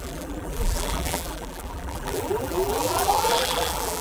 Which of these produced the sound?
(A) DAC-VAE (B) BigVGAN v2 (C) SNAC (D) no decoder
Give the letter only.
B